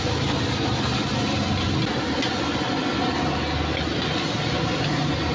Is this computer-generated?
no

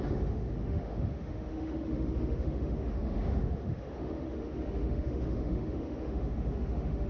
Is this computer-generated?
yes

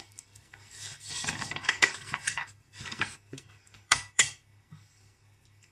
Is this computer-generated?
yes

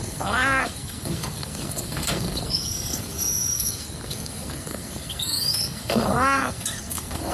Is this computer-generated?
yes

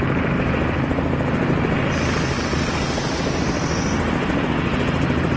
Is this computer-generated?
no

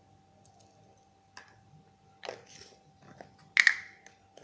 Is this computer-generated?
no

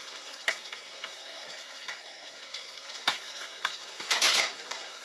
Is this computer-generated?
yes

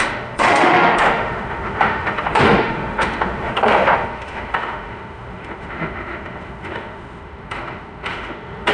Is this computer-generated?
yes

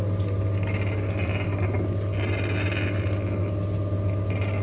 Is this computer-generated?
no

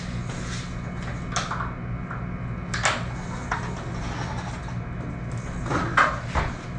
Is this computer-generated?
no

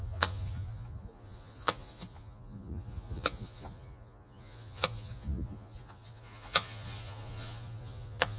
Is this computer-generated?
yes